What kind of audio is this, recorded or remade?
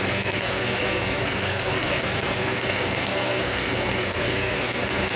remade